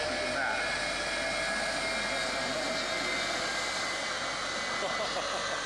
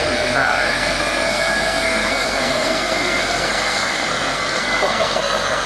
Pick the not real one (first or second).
second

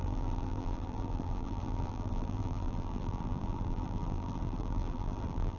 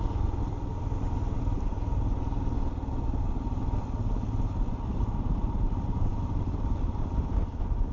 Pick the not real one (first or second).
first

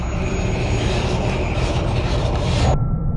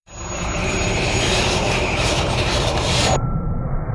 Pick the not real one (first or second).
second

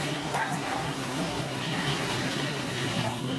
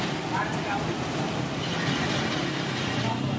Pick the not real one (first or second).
first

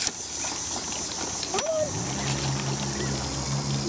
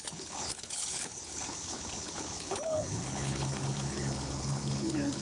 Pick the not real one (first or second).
second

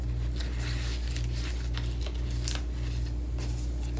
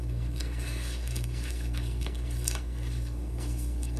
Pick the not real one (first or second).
second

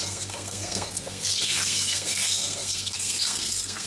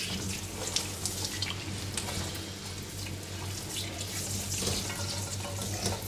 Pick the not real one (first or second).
first